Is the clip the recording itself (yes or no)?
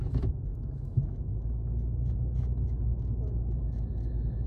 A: no